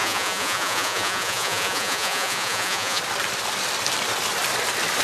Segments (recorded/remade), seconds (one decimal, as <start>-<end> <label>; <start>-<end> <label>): 0.0-3.0 remade; 3.0-5.0 recorded

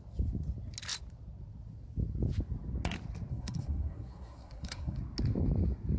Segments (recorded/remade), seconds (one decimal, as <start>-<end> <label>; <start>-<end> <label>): 0.0-3.3 recorded; 3.3-5.0 remade; 5.0-6.0 recorded

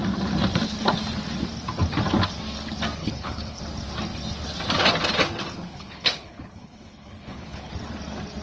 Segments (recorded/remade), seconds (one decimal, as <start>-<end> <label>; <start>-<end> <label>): 0.0-3.0 recorded; 3.0-3.6 remade; 3.6-5.5 recorded; 5.5-7.7 remade; 7.7-8.4 recorded

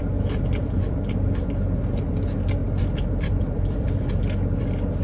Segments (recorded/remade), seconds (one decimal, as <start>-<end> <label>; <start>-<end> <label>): 0.0-2.6 recorded; 2.6-4.0 remade; 4.0-5.0 recorded

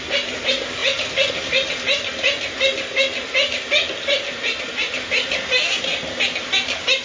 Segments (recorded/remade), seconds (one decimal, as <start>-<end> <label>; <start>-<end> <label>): 0.0-7.0 recorded

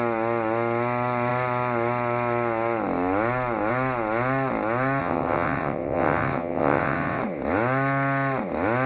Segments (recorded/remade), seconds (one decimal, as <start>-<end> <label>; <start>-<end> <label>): 0.0-5.0 recorded; 5.0-7.2 remade; 7.2-8.9 recorded

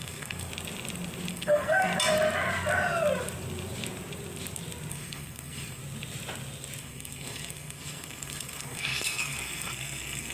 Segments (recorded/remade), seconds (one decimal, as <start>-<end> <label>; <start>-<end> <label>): 0.0-0.5 remade; 0.5-1.3 recorded; 1.3-1.9 remade; 1.9-4.9 recorded; 4.9-5.8 remade; 5.8-6.8 recorded; 6.8-10.3 remade

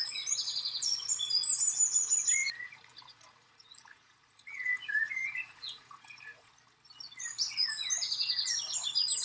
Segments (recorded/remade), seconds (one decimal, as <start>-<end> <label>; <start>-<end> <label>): 0.0-2.4 recorded; 2.4-6.5 remade; 6.5-9.2 recorded